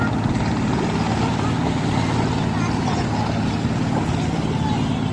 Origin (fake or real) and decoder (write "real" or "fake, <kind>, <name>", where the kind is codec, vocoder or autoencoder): real